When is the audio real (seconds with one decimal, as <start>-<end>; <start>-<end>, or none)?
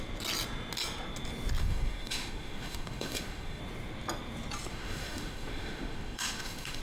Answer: 0.0-1.6; 3.6-4.7